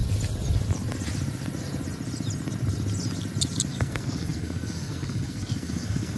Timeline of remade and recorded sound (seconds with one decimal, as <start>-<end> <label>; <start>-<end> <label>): 0.0-3.7 recorded; 3.7-6.2 remade